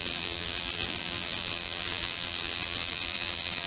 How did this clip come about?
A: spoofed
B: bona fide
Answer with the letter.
A